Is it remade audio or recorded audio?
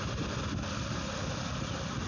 recorded